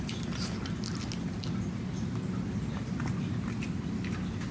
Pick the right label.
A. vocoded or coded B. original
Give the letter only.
B